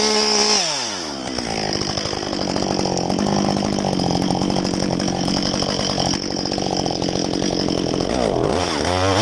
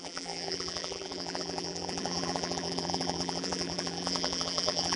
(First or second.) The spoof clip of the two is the second